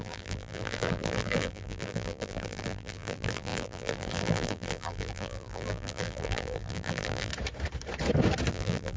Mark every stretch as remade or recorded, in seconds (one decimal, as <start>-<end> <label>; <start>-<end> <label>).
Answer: 0.0-7.3 remade; 7.3-8.5 recorded; 8.5-9.0 remade